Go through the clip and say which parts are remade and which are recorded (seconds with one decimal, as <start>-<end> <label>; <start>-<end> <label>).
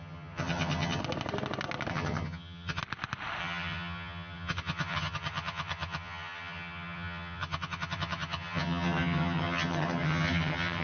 0.0-1.0 remade; 1.0-1.9 recorded; 1.9-2.8 remade; 2.8-3.4 recorded; 3.4-10.8 remade